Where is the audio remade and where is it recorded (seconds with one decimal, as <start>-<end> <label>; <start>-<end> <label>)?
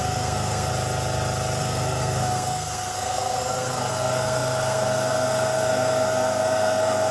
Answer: 0.0-0.7 remade; 0.7-1.6 recorded; 1.6-7.1 remade